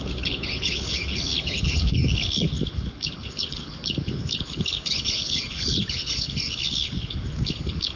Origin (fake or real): fake